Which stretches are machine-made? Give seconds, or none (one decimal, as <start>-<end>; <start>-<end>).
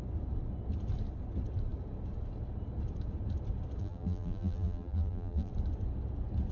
3.8-5.5